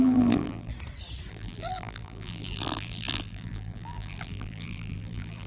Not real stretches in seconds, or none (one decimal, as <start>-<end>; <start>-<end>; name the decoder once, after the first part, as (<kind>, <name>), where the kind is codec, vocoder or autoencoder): 0.0-0.7 (vocoder, BigVGAN v2); 1.3-5.5